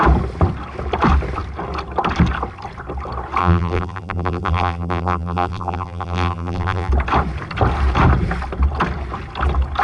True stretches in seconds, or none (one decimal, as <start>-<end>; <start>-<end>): 0.0-3.4; 6.9-9.8